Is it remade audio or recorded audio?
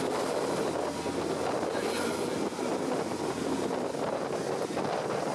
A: recorded